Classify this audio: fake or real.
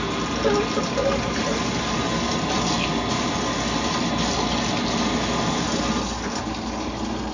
real